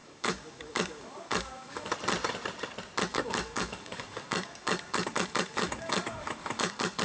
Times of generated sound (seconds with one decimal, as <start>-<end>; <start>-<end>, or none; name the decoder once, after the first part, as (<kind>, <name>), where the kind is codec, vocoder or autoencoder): 0.0-1.9 (codec, DAC); 3.1-7.0

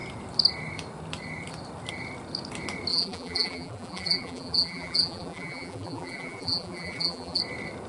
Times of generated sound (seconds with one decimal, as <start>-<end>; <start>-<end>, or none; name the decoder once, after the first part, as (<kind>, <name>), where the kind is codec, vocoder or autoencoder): 2.9-7.4 (vocoder, BigVGAN v2)